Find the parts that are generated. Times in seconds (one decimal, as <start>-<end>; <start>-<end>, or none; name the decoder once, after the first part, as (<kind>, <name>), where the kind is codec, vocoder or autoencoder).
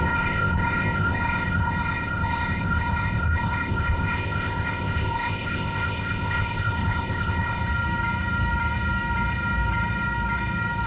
0.0-7.6 (codec, ZipCodec)